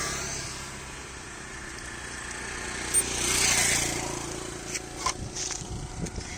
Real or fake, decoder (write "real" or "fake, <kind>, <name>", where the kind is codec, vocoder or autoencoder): real